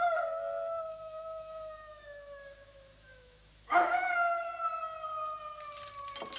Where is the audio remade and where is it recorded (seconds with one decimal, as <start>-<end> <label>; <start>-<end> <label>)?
0.0-0.9 recorded; 0.9-4.5 remade; 4.5-6.4 recorded